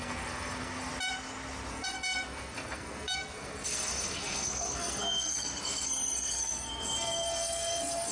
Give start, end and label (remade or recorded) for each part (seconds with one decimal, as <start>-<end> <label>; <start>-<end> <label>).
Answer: 0.0-0.9 remade; 0.9-1.7 recorded; 1.7-8.1 remade

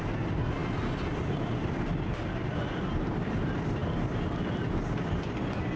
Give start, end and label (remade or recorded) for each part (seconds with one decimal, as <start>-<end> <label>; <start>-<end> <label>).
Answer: 0.0-0.6 remade; 0.6-1.1 recorded; 1.1-3.8 remade; 3.8-5.0 recorded; 5.0-5.8 remade

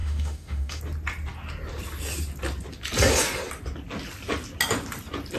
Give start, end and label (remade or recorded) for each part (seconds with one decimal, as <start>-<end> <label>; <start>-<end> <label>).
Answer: 0.0-0.8 remade; 0.8-5.4 recorded

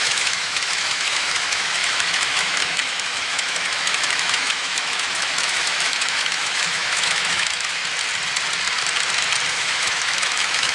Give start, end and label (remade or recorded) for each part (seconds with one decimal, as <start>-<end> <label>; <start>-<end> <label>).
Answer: 0.0-7.8 remade; 7.8-9.5 recorded; 9.5-10.7 remade

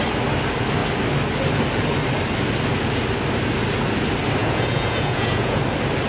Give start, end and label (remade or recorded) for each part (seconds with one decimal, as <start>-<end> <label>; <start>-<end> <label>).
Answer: 0.0-4.4 recorded; 4.4-5.6 remade; 5.6-6.1 recorded

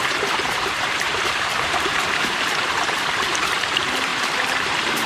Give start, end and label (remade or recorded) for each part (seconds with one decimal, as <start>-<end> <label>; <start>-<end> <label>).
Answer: 0.0-5.1 remade